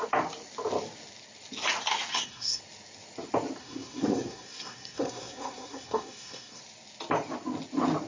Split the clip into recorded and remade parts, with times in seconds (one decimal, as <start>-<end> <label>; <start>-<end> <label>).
0.0-2.1 recorded; 2.1-2.6 remade; 2.6-3.6 recorded; 3.6-6.6 remade; 6.6-8.1 recorded